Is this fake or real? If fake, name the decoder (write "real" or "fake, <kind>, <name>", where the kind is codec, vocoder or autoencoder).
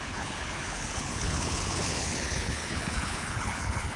fake, codec, HILCodec